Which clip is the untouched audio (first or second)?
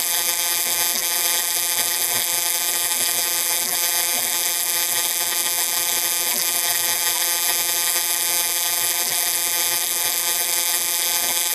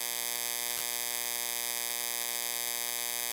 second